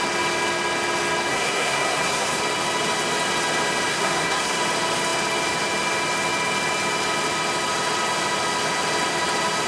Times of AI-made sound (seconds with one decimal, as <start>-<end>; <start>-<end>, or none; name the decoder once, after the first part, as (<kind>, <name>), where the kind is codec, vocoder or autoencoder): 1.3-2.4 (codec, SNAC); 3.9-4.6